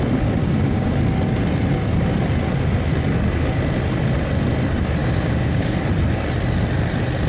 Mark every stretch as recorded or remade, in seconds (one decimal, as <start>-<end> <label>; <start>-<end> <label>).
0.0-0.4 recorded; 0.4-0.9 remade; 0.9-5.0 recorded; 5.0-5.8 remade; 5.8-7.3 recorded